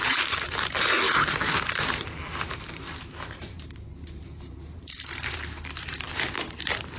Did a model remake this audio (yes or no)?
yes